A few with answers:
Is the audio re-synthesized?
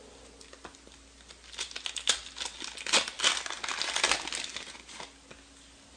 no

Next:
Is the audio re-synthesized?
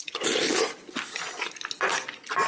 no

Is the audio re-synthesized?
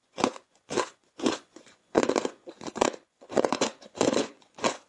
yes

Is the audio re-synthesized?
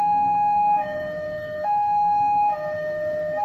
yes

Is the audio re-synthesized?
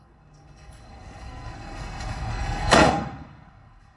yes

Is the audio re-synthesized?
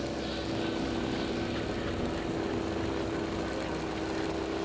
no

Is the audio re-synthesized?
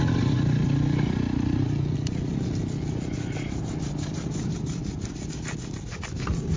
no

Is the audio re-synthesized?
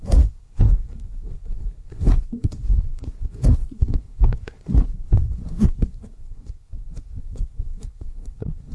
yes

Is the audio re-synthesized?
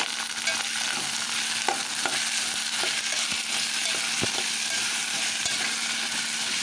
no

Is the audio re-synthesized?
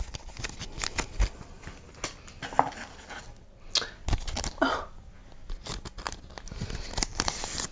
no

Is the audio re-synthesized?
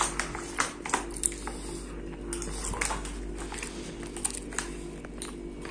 no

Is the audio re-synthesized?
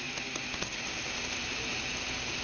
no